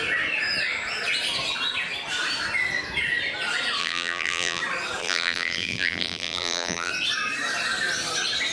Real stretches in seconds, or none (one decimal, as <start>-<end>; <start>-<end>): 0.0-3.8; 4.6-5.0; 6.9-8.5